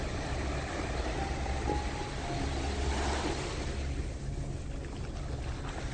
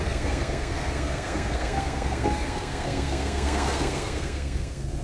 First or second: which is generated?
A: second